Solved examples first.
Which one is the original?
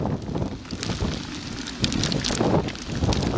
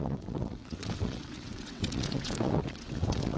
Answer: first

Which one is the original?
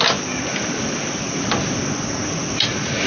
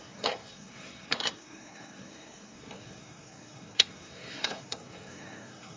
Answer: first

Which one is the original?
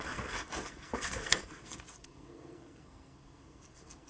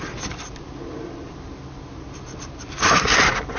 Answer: second